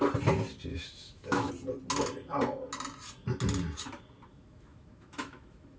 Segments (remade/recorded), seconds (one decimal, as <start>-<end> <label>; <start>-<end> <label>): 0.0-0.7 recorded; 0.7-1.5 remade; 1.5-4.3 recorded; 4.3-5.8 remade